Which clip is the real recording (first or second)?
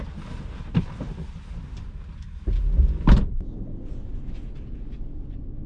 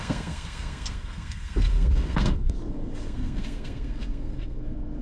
first